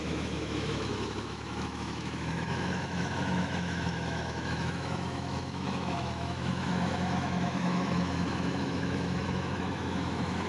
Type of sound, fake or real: fake